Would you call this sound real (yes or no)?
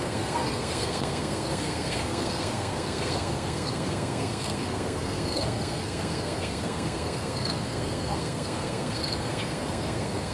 no